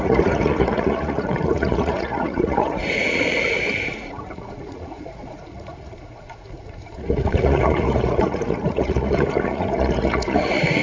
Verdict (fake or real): fake